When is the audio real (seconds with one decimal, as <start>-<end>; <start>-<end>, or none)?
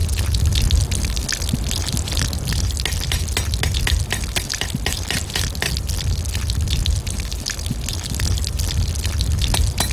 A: 0.0-9.9